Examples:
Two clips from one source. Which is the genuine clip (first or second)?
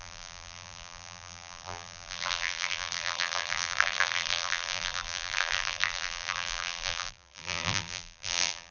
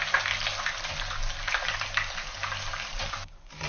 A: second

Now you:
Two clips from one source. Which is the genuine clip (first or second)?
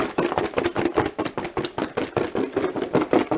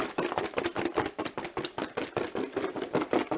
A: first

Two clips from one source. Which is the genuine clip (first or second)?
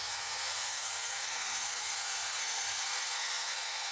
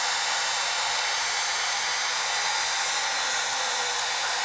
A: second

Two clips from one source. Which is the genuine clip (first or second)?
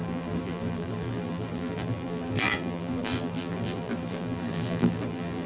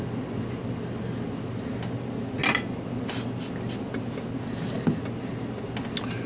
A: second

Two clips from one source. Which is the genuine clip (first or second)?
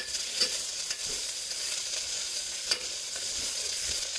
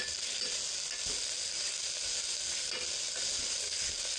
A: second